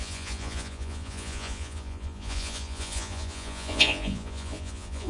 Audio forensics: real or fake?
fake